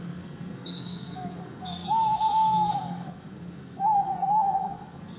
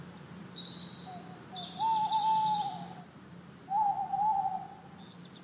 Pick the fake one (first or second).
first